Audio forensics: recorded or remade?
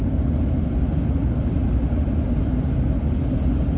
recorded